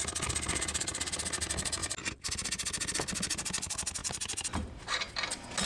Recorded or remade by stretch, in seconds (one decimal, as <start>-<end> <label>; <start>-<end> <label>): 0.0-5.7 recorded

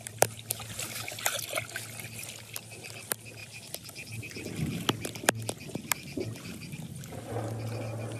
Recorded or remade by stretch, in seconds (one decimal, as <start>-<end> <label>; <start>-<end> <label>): 0.0-8.2 recorded

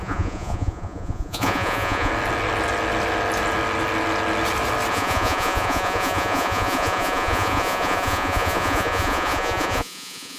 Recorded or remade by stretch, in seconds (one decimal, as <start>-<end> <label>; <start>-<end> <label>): 0.0-2.1 remade; 2.1-4.9 recorded; 4.9-10.4 remade

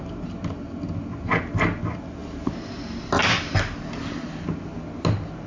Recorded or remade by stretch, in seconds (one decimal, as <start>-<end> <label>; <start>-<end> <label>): 0.0-5.5 recorded

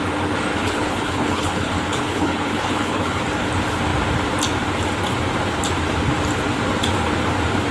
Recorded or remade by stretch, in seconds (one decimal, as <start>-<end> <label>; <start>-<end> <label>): 0.0-0.5 recorded; 0.5-3.2 remade; 3.2-7.7 recorded